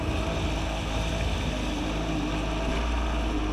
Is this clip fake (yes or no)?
no